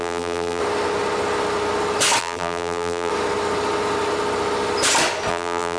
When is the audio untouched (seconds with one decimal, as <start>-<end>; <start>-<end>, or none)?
0.6-2.2; 3.1-5.3